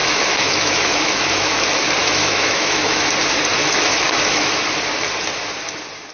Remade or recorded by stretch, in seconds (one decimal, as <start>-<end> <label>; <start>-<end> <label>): 0.0-1.6 remade; 1.6-2.0 recorded; 2.0-3.1 remade; 3.1-3.6 recorded; 3.6-4.6 remade; 4.6-6.1 recorded